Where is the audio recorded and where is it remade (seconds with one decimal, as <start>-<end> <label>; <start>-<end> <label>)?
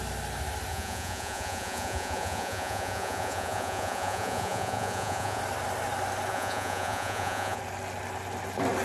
0.0-0.7 recorded; 0.7-5.4 remade; 5.4-6.3 recorded; 6.3-7.6 remade; 7.6-8.8 recorded